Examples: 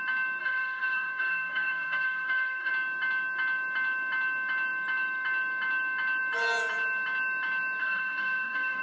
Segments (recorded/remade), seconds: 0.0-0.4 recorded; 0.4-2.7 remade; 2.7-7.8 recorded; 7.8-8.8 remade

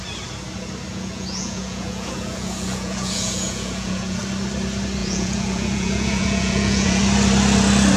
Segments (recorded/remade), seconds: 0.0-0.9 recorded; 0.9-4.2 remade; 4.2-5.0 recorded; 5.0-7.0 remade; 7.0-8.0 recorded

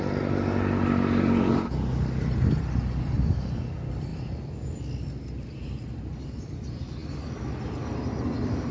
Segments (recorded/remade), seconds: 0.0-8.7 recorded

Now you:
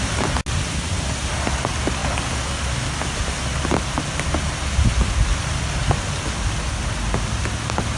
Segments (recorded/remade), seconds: 0.0-8.0 recorded

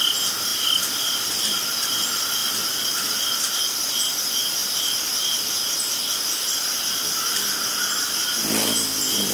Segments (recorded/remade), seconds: 0.0-2.4 recorded; 2.4-3.4 remade; 3.4-4.6 recorded; 4.6-8.2 remade; 8.2-9.3 recorded

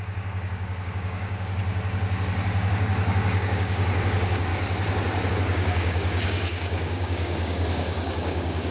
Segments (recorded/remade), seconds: 0.0-1.6 remade; 1.6-2.7 recorded; 2.7-4.5 remade; 4.5-5.3 recorded; 5.3-8.7 remade

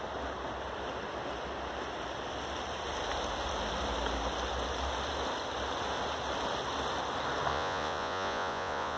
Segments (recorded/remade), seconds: 0.0-7.5 recorded; 7.5-9.0 remade